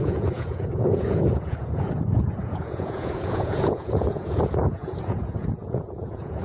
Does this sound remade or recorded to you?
remade